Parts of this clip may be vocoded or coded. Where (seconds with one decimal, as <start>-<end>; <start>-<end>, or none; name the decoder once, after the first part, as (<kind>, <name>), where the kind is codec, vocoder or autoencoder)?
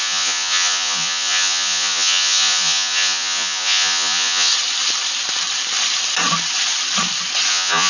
0.0-4.5 (vocoder, Vocos); 7.5-7.9